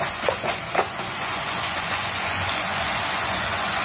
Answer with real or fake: fake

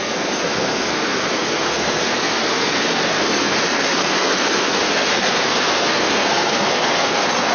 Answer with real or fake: fake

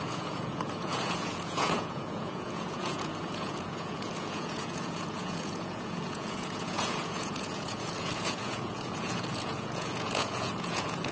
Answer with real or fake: fake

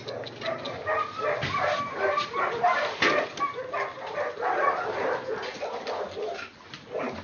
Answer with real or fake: real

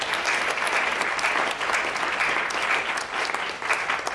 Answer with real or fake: real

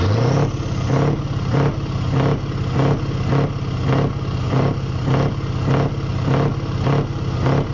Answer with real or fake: real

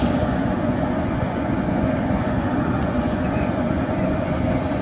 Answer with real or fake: fake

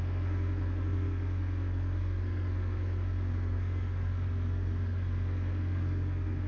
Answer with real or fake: fake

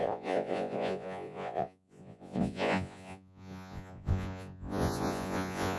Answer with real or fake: fake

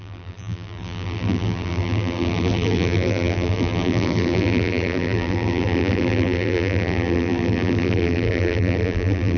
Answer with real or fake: fake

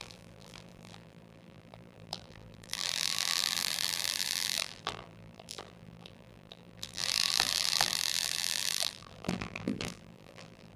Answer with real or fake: fake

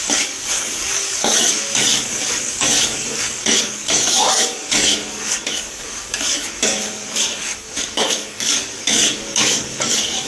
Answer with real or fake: fake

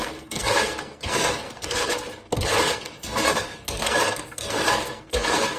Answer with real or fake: fake